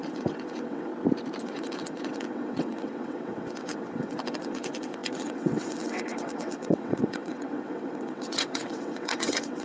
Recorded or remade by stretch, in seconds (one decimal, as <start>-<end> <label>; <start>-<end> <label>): 0.0-0.9 remade; 0.9-1.4 recorded; 1.4-9.6 remade